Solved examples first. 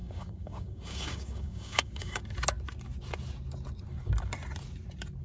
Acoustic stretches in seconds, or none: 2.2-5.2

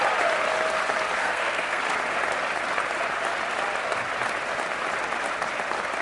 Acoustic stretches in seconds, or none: 0.0-1.2; 1.8-6.0

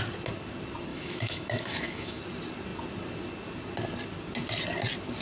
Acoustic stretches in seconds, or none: 0.0-0.9; 2.2-5.2

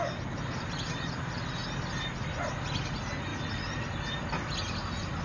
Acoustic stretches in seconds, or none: 0.0-5.2

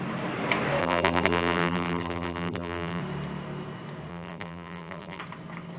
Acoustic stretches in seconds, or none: 0.0-0.8; 3.0-4.1; 5.2-5.8